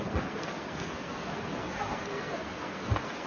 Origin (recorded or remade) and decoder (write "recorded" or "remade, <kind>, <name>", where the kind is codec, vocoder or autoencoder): remade, codec, SNAC